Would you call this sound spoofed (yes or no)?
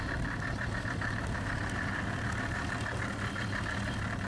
no